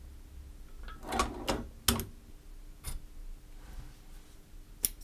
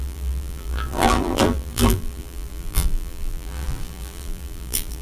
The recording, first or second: first